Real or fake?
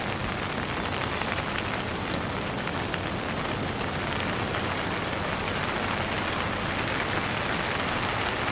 real